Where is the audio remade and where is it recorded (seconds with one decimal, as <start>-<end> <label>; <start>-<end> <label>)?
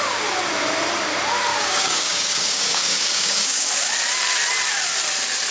0.0-1.5 recorded; 1.5-3.7 remade; 3.7-5.5 recorded